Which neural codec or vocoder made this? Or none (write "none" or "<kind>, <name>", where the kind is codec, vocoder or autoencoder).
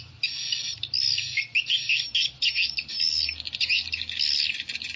none